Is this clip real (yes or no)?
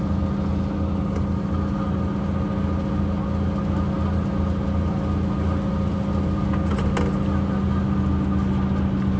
yes